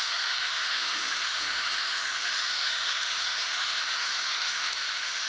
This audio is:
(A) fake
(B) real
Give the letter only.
A